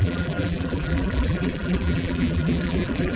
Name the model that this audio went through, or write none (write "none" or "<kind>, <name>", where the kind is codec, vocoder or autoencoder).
vocoder, BigVGAN v2